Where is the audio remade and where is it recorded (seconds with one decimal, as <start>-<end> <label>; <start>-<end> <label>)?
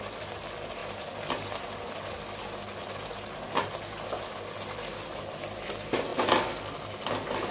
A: 0.0-7.5 recorded